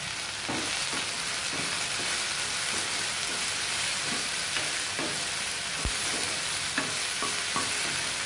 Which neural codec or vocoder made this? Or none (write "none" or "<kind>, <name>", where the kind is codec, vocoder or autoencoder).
none